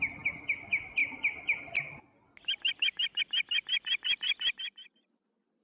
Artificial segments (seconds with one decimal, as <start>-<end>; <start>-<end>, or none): none